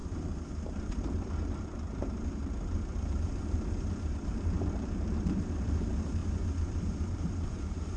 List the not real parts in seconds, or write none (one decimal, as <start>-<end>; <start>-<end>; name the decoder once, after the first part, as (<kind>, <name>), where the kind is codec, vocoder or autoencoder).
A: 0.6-6.2 (vocoder, BigVGAN v2); 6.8-8.0

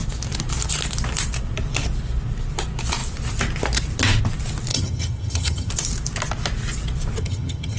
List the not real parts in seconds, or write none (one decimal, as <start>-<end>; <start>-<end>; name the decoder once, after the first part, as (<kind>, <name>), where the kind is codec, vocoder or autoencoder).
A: 4.7-5.7 (vocoder, HiFi-GAN); 7.2-7.8

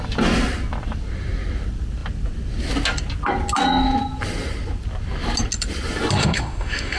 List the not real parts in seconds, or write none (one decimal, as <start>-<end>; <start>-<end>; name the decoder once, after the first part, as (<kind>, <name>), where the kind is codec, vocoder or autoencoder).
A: 6.2-7.0 (autoencoder, DAC-VAE)

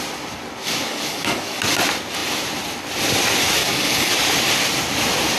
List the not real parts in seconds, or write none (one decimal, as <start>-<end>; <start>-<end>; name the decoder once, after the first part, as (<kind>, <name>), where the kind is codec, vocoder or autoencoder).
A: 0.6-1.6 (codec, DAC); 3.6-4.1

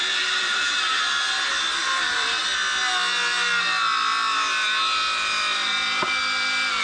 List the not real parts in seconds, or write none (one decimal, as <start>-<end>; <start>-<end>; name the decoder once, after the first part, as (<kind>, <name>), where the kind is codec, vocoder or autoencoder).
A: 0.0-1.0 (vocoder, BigVGAN v2); 1.8-2.4

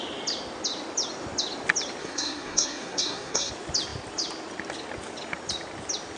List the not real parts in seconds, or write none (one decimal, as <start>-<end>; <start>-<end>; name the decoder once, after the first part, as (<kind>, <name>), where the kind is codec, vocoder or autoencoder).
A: 2.0-3.5 (codec, SNAC)